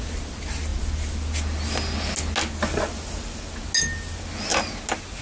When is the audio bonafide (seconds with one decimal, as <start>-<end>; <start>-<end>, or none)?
0.0-5.2